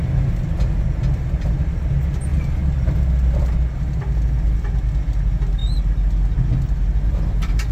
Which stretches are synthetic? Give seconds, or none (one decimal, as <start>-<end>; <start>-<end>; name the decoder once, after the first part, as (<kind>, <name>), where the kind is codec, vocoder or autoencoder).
none